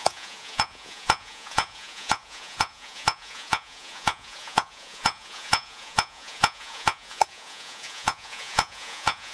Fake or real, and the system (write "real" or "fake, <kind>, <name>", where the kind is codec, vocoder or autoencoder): fake, vocoder, Vocos